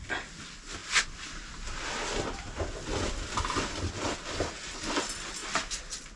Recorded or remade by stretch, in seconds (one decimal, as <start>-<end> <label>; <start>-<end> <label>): 0.0-6.2 recorded